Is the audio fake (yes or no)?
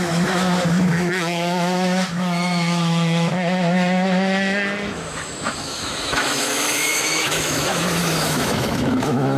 yes